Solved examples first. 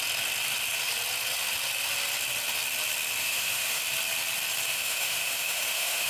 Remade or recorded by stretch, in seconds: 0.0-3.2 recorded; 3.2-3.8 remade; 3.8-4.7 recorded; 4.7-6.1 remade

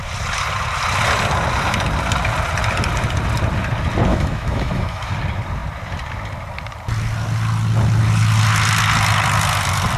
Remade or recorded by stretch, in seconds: 0.0-4.1 recorded; 4.1-5.1 remade; 5.1-10.0 recorded

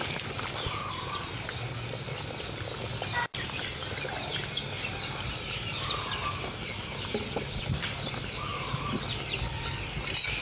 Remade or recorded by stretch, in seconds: 0.0-10.4 recorded

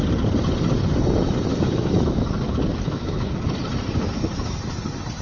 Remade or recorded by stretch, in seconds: 0.0-1.5 recorded; 1.5-2.2 remade; 2.2-2.7 recorded; 2.7-3.3 remade; 3.3-5.2 recorded

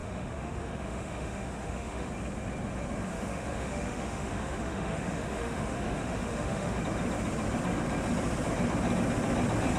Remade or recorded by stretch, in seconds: 0.0-2.1 remade; 2.1-3.1 recorded; 3.1-6.8 remade; 6.8-9.8 recorded

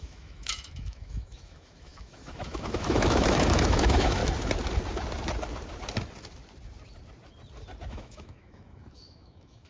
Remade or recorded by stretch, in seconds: 0.0-4.2 remade; 4.2-7.9 recorded; 7.9-9.7 remade

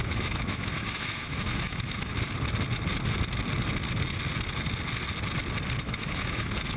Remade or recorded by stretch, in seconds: 0.0-2.1 remade; 2.1-5.8 recorded; 5.8-6.8 remade